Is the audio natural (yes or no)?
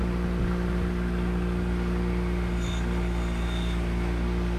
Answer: yes